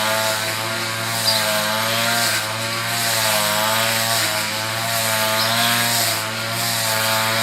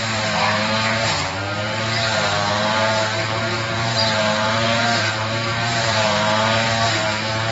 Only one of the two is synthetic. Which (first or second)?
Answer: second